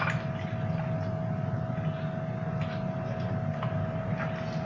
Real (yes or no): yes